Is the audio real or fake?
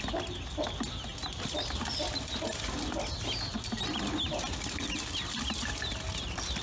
real